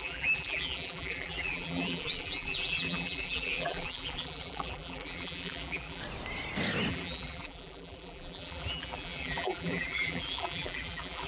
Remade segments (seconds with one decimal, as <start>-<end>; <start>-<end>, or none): 0.0-6.0; 6.9-11.3